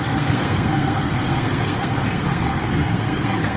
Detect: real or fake fake